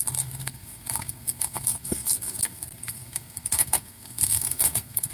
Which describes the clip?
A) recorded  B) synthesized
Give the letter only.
B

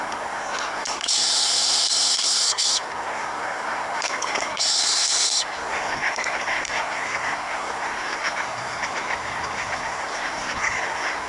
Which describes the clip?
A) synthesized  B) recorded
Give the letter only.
A